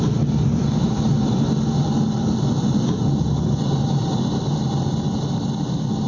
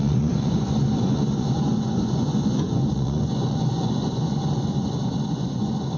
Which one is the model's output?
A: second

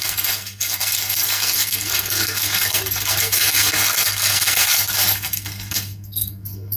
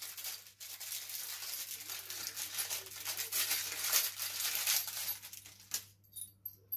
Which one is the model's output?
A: first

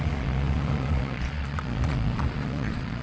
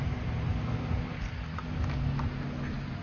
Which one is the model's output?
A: first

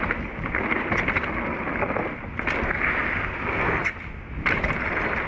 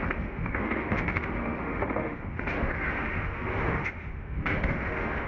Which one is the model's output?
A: second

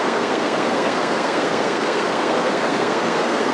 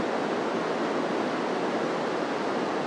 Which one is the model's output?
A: first